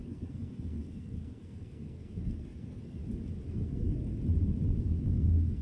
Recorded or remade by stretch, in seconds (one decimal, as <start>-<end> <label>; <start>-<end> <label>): 0.0-3.0 remade; 3.0-3.5 recorded; 3.5-4.1 remade; 4.1-4.8 recorded; 4.8-5.6 remade